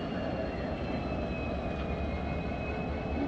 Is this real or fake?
real